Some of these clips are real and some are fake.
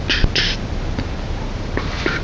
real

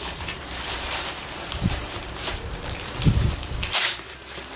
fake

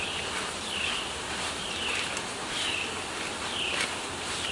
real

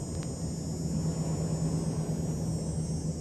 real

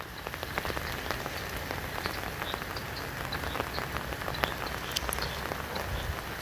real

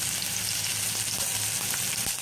real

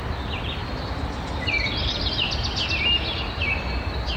real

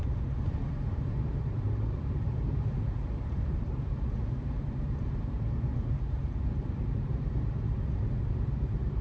fake